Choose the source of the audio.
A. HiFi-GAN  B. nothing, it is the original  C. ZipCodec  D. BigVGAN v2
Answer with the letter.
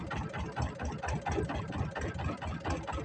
B